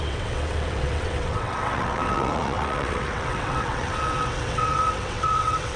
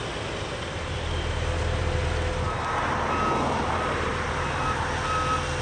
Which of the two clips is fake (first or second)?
first